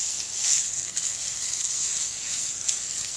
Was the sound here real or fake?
fake